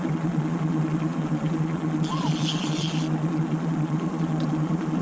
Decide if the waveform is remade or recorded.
remade